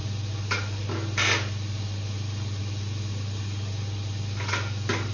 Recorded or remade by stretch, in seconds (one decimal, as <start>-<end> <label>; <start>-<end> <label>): 0.0-5.1 recorded